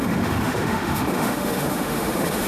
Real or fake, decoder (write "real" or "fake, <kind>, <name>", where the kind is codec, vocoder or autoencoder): fake, autoencoder, DAC-VAE